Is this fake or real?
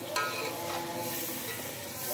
real